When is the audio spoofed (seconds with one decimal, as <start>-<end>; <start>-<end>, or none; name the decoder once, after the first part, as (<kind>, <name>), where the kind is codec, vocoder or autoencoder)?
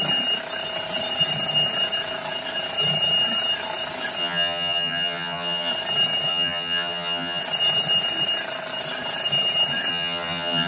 4.2-5.7 (vocoder, HiFi-GAN); 6.3-7.4; 9.9-10.7